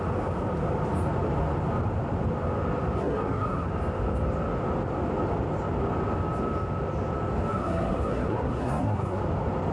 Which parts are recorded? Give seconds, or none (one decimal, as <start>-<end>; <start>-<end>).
0.0-3.0; 3.7-7.5; 9.2-9.7